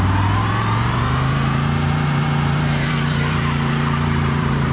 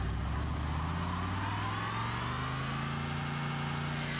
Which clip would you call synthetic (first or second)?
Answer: first